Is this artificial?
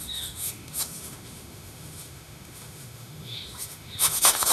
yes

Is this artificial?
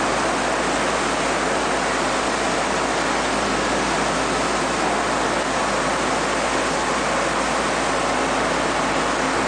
no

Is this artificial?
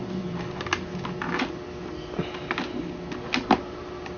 no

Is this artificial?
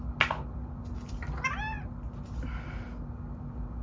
no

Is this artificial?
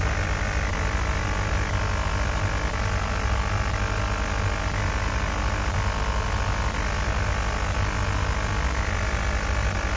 no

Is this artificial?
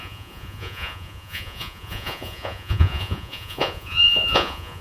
yes